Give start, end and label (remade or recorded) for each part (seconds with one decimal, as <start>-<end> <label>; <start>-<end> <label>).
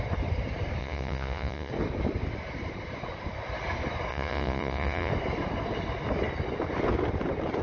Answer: 0.0-0.8 recorded; 0.8-1.7 remade; 1.7-4.1 recorded; 4.1-5.1 remade; 5.1-7.6 recorded